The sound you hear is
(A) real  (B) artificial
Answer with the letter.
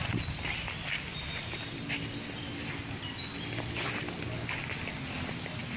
A